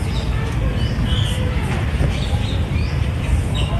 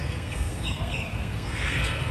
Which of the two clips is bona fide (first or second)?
first